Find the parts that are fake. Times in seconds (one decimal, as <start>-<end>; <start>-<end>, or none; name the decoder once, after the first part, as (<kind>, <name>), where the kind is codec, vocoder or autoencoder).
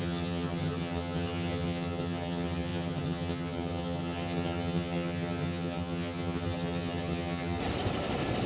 0.0-7.6 (vocoder, HiFi-GAN)